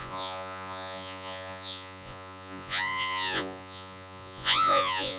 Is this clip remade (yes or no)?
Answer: yes